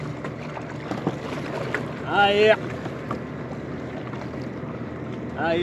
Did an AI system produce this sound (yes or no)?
no